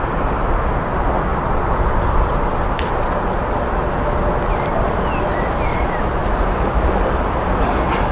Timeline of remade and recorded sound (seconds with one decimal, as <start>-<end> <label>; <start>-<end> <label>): 0.0-8.1 recorded